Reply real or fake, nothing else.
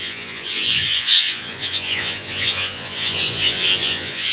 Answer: fake